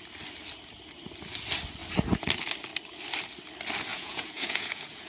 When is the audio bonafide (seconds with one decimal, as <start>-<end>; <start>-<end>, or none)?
0.0-3.9